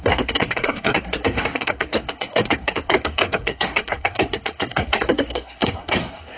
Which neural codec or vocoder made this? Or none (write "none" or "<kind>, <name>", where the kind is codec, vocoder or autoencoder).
codec, SNAC